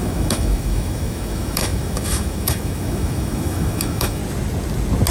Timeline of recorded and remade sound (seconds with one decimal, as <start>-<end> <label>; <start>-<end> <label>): 0.0-4.2 remade; 4.2-5.1 recorded